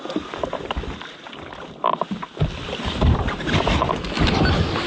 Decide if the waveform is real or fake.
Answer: real